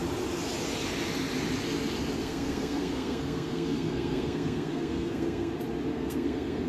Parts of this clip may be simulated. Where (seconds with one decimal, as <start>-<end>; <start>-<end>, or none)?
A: 2.2-5.5; 5.9-6.7